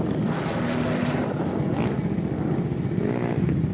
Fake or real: real